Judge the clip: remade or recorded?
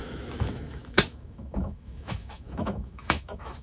remade